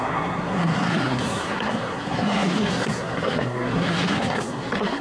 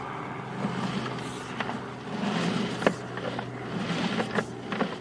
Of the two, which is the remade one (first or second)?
first